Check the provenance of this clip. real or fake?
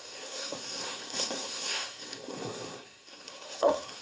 fake